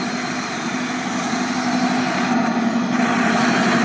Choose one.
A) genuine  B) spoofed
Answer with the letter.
A